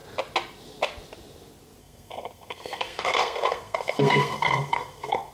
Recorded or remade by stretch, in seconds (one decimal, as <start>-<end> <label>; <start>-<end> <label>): 0.0-1.8 recorded; 1.8-5.3 remade